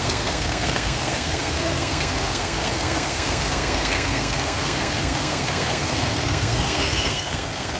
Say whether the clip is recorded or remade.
remade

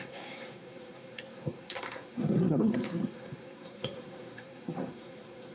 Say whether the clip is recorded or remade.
remade